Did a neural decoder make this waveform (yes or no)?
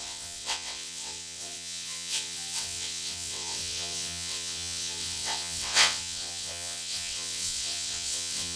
yes